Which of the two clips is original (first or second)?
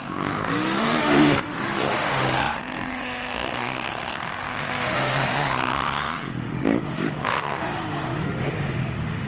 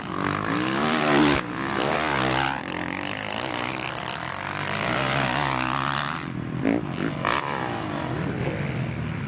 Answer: second